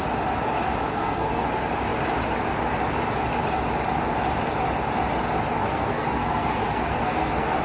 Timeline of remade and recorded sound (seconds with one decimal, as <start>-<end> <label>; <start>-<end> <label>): 0.0-0.9 recorded; 0.9-1.5 remade; 1.5-5.6 recorded; 5.6-7.6 remade